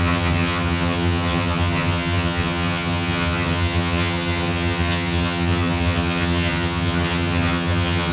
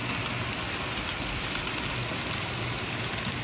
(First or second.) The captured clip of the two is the second